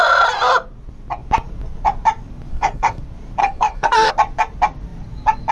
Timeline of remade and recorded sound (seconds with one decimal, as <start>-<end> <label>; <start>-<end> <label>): 0.0-2.5 recorded; 2.5-3.0 remade; 3.0-3.4 recorded; 3.4-4.1 remade; 4.1-5.5 recorded